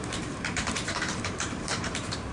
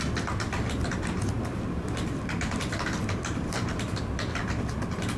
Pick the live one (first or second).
second